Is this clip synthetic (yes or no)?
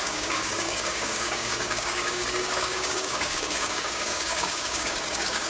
yes